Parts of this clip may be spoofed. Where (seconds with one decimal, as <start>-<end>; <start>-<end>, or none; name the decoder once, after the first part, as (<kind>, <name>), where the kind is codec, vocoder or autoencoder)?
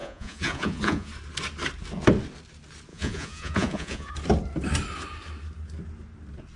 0.0-1.1 (vocoder, Vocos); 2.9-4.1